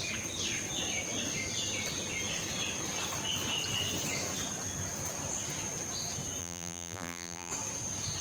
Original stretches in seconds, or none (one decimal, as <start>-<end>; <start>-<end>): 0.0-6.4; 7.5-8.2